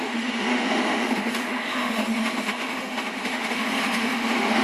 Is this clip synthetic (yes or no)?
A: yes